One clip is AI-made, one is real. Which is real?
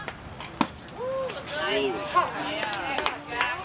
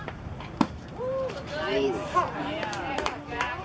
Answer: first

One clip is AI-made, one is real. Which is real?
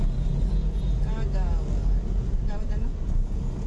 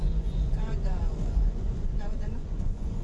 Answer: first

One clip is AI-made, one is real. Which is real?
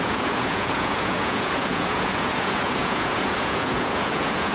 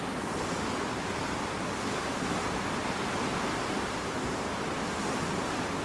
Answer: second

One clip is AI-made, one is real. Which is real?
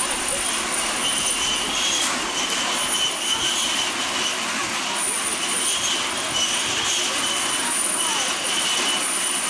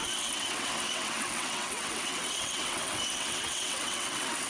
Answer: first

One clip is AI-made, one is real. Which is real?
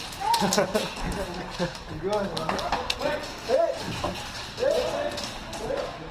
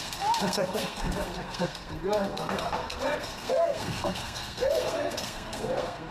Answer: first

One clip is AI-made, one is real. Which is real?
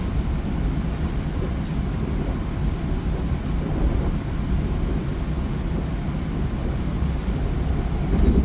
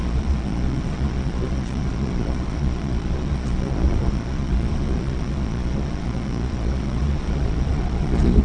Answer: first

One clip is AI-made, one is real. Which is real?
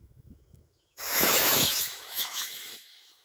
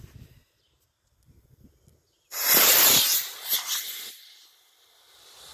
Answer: second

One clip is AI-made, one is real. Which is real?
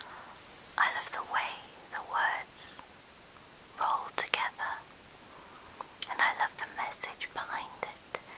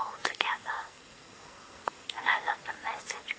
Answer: first